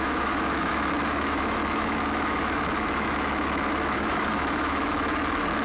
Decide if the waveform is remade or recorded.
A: remade